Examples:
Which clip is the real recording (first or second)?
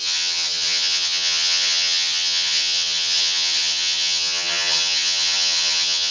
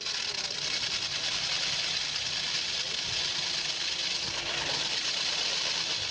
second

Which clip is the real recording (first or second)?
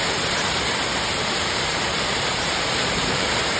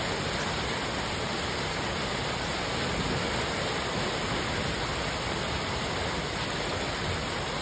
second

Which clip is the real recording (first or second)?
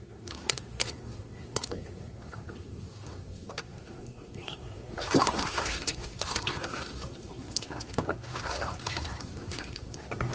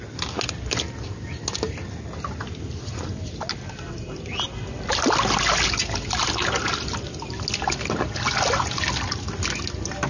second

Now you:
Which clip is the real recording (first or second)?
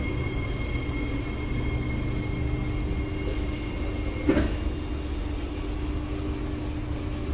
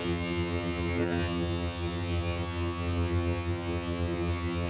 first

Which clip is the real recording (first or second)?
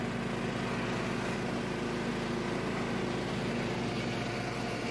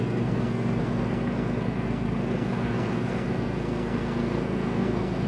first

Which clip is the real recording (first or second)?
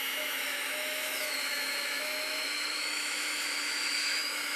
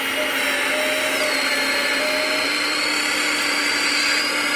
second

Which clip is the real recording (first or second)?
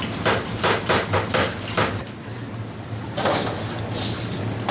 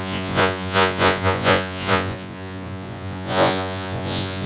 first